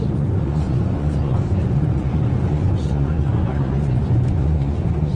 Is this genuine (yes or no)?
no